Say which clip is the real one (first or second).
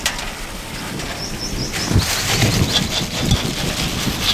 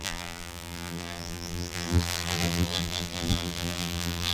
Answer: first